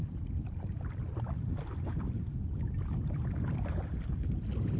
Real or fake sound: real